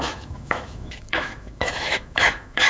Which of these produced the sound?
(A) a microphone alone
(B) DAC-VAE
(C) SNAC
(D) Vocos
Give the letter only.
B